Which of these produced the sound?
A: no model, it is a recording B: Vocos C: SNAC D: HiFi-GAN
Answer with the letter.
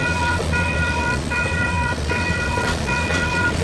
B